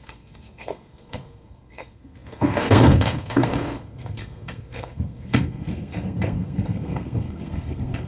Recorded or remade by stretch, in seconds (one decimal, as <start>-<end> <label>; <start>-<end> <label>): 0.0-8.1 remade